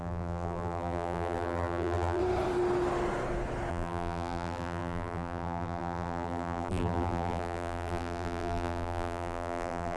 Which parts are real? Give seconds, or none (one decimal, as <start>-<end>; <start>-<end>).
2.2-3.7